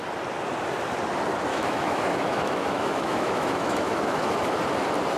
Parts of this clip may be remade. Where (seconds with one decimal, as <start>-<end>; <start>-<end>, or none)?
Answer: 1.5-4.6